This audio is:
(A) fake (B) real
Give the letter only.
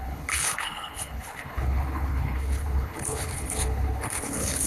A